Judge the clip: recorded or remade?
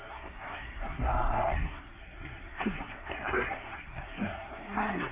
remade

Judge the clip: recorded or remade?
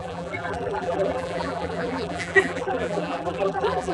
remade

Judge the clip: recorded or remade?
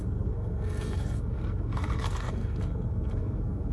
remade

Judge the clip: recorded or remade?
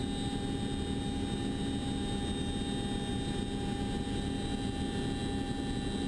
recorded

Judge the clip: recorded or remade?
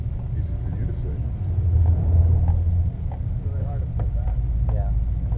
recorded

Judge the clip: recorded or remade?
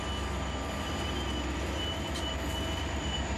recorded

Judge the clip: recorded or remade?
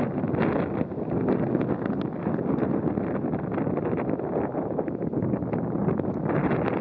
recorded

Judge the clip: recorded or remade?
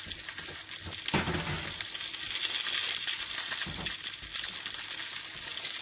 recorded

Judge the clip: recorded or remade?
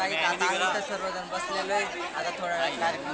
recorded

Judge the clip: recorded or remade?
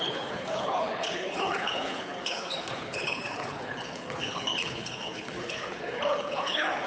remade